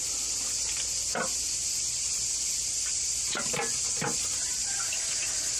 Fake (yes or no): yes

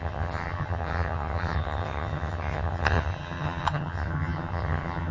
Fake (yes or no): yes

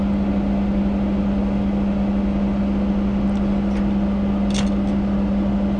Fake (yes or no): no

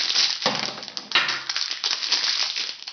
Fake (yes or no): no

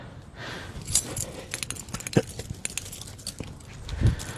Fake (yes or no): no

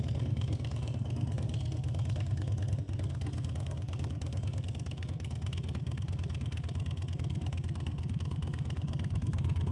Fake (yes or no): yes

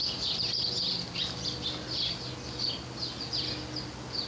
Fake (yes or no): no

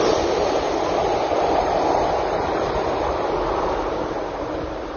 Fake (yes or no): no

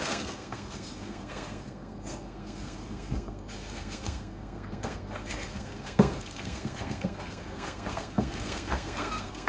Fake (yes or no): yes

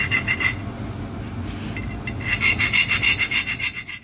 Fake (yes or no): no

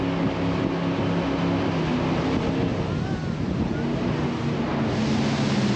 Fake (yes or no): no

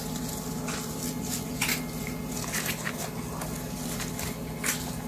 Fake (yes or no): no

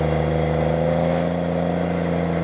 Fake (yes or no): no